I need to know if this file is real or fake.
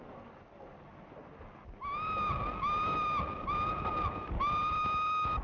real